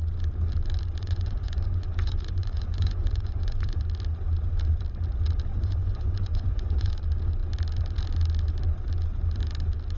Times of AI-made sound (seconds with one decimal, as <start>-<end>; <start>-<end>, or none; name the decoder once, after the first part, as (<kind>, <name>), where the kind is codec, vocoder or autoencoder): 1.0-3.8 (vocoder, Vocos); 5.5-6.9